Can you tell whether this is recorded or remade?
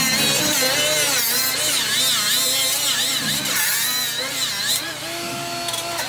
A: recorded